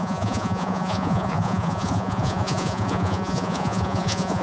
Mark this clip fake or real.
fake